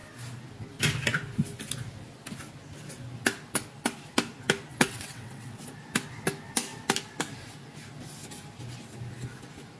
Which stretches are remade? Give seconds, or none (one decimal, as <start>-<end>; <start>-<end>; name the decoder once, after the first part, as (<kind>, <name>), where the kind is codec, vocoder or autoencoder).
4.7-5.6 (vocoder, WaveNeXt)